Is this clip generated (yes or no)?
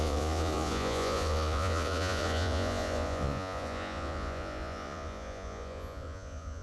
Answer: yes